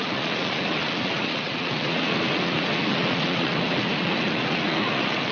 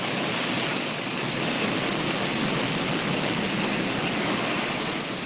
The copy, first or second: first